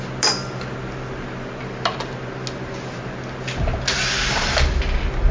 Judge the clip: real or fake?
real